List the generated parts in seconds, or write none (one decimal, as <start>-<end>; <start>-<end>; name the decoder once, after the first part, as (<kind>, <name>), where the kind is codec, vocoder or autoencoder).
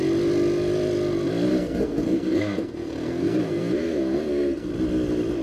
1.5-4.7 (codec, SNAC)